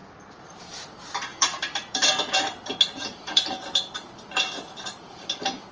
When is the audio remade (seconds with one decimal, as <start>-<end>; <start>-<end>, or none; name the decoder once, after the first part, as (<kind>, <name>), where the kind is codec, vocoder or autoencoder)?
0.0-0.6 (vocoder, BigVGAN v2); 1.3-2.1; 3.0-5.1